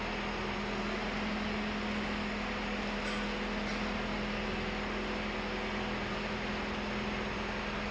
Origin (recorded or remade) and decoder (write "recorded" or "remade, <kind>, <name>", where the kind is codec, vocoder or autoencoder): recorded